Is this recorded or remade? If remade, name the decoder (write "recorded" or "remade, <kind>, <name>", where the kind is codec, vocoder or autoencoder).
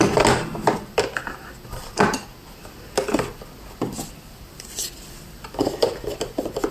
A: recorded